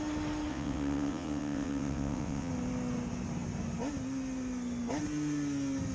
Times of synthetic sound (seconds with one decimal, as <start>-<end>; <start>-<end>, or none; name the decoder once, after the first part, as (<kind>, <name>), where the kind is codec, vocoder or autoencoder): 0.5-2.5 (vocoder, WaveNeXt)